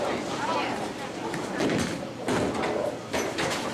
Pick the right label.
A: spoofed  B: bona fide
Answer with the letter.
B